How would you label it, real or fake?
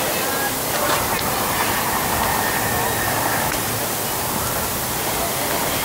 real